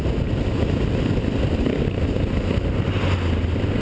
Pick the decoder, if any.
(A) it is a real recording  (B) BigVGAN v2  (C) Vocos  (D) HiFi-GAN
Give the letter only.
A